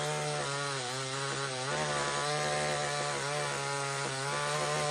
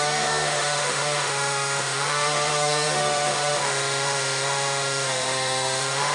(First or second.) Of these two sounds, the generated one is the second